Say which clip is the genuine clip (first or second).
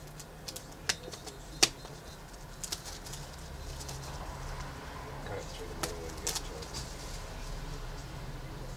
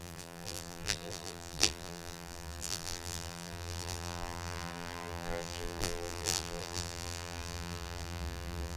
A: first